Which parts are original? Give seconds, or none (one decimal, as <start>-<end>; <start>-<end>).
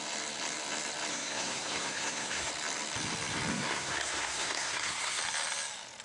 0.0-1.1; 2.5-3.5; 5.2-6.0